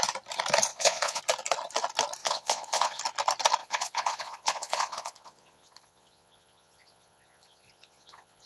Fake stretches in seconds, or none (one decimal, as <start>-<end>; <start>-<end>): 0.7-1.2; 2.2-3.0; 3.6-8.5